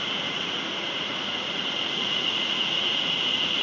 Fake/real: fake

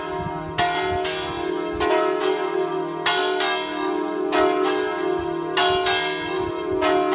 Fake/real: real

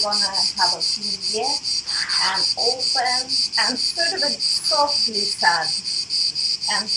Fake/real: fake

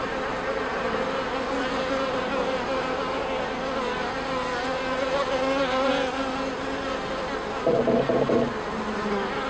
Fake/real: real